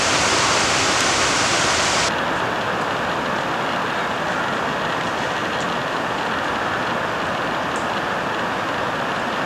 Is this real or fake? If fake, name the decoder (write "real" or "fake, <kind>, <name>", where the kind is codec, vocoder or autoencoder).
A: real